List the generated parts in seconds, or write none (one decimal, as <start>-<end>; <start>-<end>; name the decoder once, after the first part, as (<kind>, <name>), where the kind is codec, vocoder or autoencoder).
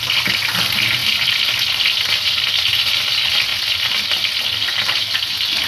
none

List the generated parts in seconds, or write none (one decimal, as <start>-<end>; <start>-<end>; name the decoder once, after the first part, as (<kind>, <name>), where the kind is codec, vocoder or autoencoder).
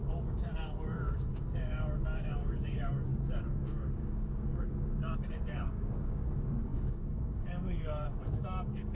0.0-8.9 (codec, DAC)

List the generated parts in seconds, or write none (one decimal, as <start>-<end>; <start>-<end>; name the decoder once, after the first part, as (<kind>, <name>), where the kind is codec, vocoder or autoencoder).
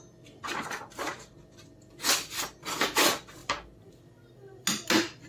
none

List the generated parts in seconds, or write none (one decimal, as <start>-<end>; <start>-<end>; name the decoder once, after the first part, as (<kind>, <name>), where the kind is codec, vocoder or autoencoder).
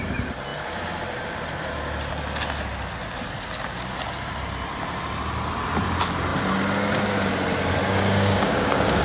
7.8-9.0 (codec, DAC)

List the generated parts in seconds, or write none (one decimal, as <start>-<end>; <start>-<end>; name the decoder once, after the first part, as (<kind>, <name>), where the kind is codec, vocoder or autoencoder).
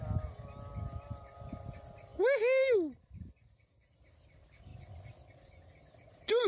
none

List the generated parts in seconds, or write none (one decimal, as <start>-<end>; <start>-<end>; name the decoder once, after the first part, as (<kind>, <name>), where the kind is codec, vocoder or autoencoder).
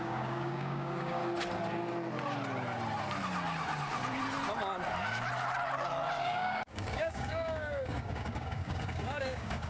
0.0-1.2 (codec, DAC); 6.2-9.7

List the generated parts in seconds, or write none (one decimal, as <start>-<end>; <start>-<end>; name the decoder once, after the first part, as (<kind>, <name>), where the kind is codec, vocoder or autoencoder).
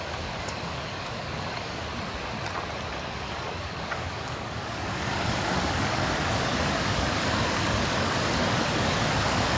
0.0-1.9 (codec, DAC); 2.9-9.6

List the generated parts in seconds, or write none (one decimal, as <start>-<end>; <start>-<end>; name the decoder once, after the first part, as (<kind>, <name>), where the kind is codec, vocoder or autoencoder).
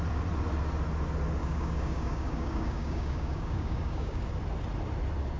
1.4-4.2 (codec, DAC)